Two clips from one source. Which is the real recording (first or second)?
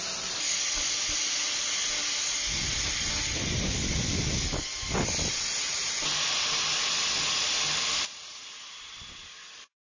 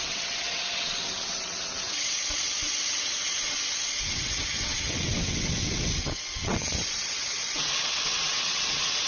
first